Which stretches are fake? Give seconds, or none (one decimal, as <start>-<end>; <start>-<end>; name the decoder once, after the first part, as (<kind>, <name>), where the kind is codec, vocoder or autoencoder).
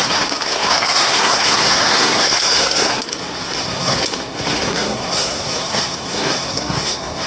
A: 0.0-7.3 (codec, SNAC)